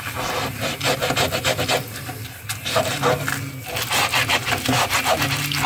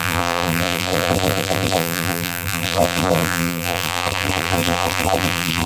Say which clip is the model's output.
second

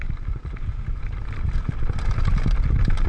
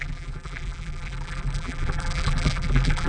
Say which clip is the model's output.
second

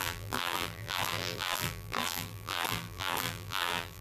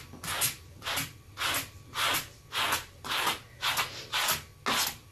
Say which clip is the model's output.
first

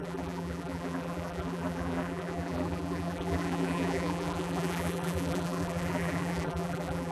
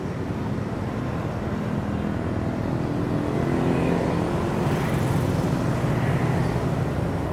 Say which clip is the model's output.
first